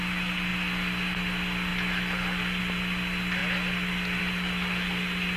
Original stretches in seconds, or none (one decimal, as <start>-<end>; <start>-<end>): 0.0-5.4